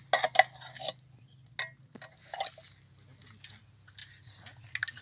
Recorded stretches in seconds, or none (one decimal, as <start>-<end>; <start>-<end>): 0.0-5.0